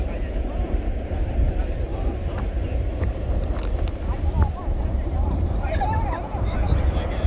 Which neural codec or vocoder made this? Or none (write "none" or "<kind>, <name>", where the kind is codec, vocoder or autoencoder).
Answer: vocoder, BigVGAN v2